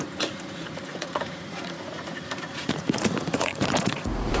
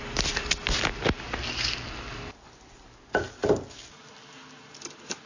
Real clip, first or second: second